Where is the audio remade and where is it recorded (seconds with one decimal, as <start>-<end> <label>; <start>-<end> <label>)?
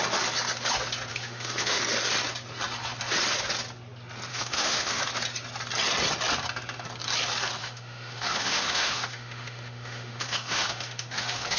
0.0-1.1 recorded; 1.1-1.8 remade; 1.8-4.3 recorded; 4.3-5.0 remade; 5.0-7.6 recorded; 7.6-11.6 remade